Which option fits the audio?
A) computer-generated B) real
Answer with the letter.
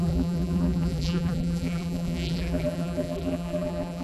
A